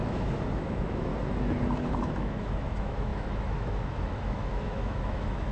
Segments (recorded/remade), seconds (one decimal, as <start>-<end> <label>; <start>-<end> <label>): 0.0-1.1 remade; 1.1-1.9 recorded; 1.9-5.5 remade

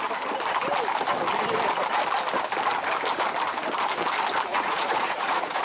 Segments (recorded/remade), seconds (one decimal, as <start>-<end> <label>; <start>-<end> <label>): 0.0-4.5 recorded; 4.5-5.6 remade

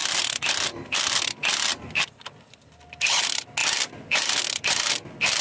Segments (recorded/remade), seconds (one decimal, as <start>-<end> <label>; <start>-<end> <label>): 0.0-3.2 remade; 3.2-5.4 recorded

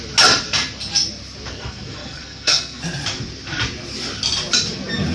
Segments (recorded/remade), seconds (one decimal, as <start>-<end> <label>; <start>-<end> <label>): 0.0-1.5 recorded; 1.5-2.8 remade; 2.8-5.1 recorded

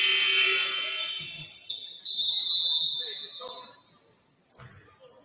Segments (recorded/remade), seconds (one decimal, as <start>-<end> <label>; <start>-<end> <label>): 0.0-1.1 recorded; 1.1-2.0 remade; 2.0-5.2 recorded

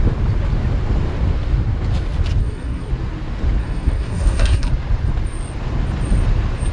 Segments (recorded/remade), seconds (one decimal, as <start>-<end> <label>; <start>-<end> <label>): 0.0-2.4 recorded; 2.4-2.9 remade; 2.9-3.6 recorded; 3.6-4.7 remade; 4.7-6.7 recorded